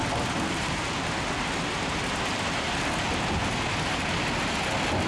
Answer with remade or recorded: recorded